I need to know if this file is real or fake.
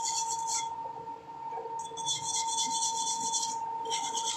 real